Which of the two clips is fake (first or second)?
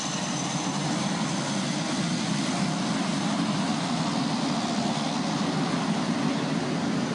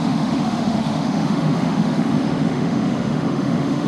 second